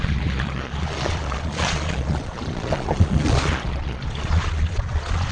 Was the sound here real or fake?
fake